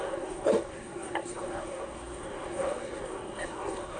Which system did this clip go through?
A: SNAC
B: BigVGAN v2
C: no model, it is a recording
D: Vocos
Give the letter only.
A